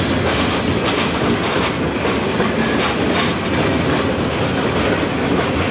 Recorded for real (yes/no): yes